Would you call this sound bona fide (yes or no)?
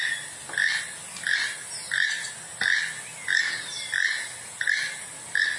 yes